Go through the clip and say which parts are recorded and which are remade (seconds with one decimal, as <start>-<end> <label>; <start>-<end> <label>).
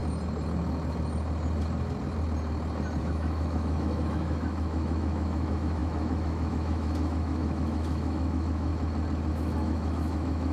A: 0.0-3.0 recorded; 3.0-8.7 remade; 8.7-9.3 recorded; 9.3-10.5 remade